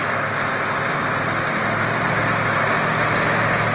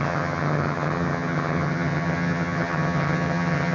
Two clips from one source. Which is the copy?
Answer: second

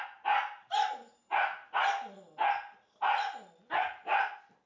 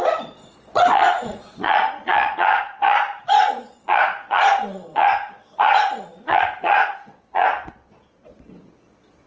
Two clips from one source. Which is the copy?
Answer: second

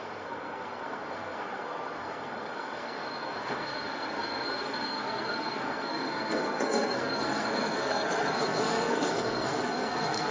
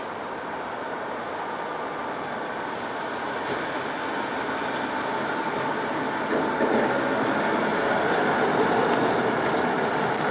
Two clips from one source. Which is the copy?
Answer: first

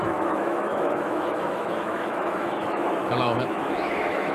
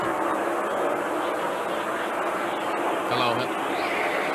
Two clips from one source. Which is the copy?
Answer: first